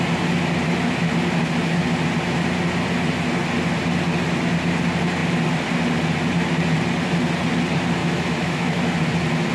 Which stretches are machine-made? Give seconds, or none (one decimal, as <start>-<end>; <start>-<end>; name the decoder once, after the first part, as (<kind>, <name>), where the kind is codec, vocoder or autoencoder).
8.0-8.8 (autoencoder, DAC-VAE)